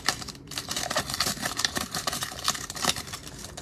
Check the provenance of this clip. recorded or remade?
remade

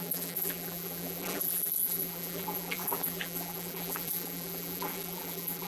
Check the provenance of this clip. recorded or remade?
remade